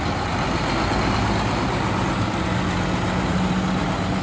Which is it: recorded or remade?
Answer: recorded